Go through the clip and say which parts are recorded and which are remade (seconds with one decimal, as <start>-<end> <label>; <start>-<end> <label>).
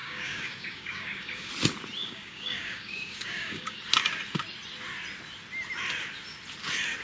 0.0-1.5 remade; 1.5-2.0 recorded; 2.0-3.8 remade; 3.8-7.0 recorded